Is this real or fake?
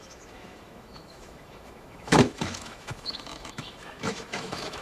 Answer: fake